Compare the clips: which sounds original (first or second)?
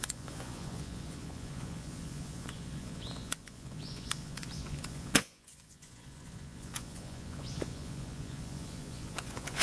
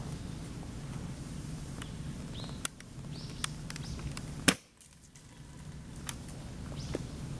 second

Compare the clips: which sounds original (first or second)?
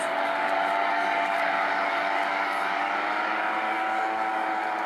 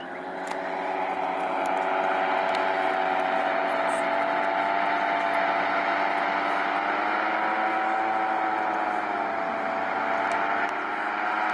second